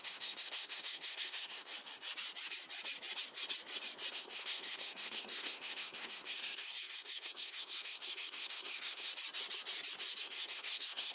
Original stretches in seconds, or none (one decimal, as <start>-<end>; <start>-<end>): 1.7-4.1; 9.1-10.2